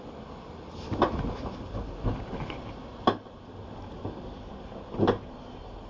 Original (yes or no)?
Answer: yes